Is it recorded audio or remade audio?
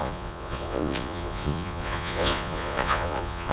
remade